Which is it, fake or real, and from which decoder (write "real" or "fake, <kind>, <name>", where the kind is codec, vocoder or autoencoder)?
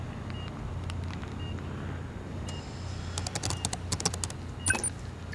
real